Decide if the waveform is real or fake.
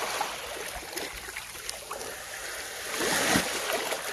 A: real